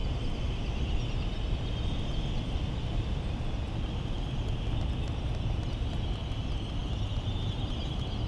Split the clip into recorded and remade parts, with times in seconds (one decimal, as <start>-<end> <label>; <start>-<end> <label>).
0.0-8.3 recorded